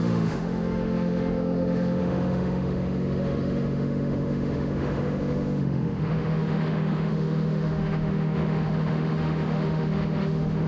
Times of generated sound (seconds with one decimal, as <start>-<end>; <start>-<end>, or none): 0.0-10.7